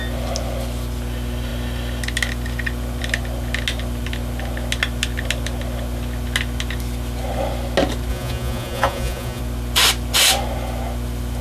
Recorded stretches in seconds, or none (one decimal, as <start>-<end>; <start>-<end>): 0.0-8.1; 9.4-11.4